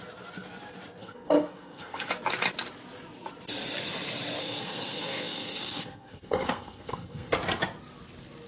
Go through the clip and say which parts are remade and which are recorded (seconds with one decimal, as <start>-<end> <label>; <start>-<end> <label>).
0.0-1.0 recorded; 1.0-2.1 remade; 2.1-4.4 recorded; 4.4-7.3 remade; 7.3-8.5 recorded